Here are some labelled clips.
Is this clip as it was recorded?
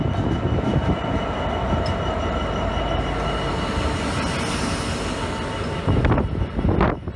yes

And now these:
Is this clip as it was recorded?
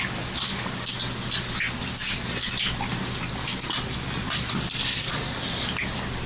yes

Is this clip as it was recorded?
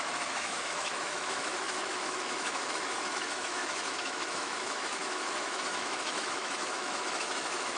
no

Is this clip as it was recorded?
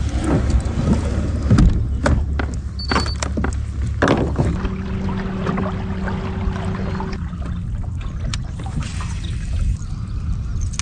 yes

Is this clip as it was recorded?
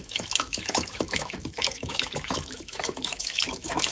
no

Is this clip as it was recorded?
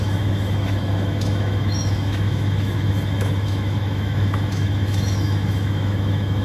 no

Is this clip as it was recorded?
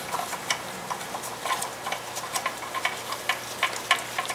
yes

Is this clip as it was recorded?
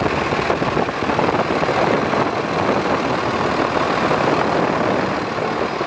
yes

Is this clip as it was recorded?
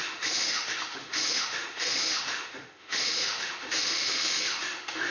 no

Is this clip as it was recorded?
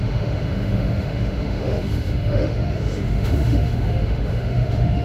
no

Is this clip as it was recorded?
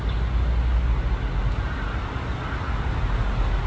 yes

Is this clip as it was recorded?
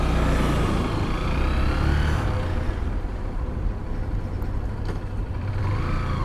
yes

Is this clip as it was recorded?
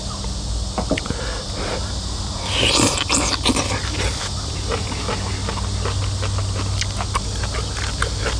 yes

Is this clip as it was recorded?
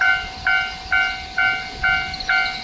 yes